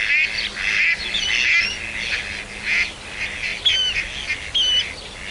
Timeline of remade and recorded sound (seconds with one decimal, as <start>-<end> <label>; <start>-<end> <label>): 0.0-5.3 recorded